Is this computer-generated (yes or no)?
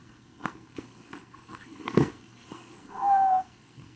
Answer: yes